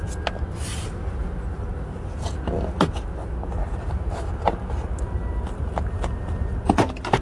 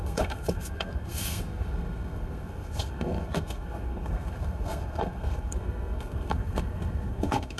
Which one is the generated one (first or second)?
second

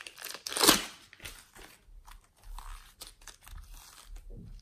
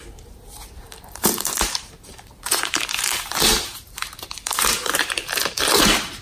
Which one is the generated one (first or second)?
second